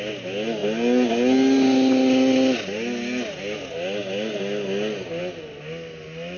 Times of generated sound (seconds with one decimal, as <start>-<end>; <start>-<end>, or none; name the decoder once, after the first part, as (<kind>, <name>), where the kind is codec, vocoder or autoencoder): none